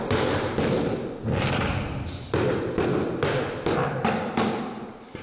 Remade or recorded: recorded